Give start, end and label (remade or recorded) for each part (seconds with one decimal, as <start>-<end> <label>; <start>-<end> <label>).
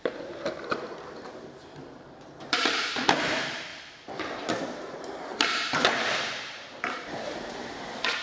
0.0-3.7 remade; 3.7-4.6 recorded; 4.6-8.2 remade